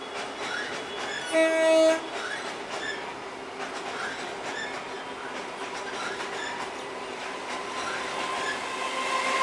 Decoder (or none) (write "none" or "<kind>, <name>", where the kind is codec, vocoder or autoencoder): none